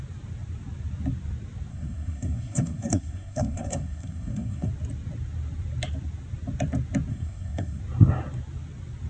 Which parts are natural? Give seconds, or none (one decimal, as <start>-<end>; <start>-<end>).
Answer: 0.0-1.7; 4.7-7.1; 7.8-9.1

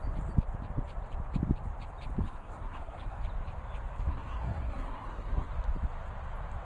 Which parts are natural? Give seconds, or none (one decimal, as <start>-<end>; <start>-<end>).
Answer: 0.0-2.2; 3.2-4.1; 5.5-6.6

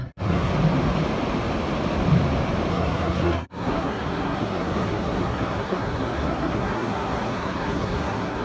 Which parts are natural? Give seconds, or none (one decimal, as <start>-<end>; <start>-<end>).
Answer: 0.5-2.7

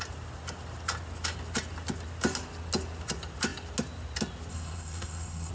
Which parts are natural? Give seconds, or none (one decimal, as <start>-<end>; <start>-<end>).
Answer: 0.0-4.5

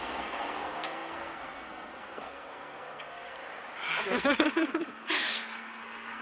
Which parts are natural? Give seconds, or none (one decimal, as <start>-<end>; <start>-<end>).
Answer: 3.4-4.0